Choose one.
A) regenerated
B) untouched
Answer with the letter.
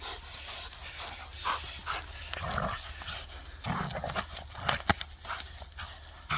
B